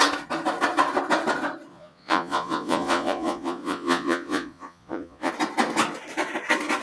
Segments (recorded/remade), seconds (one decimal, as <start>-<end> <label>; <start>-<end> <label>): 0.0-1.7 recorded; 1.7-5.3 remade; 5.3-6.8 recorded